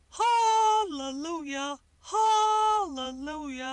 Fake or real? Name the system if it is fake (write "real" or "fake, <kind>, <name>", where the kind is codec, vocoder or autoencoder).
fake, vocoder, BigVGAN v2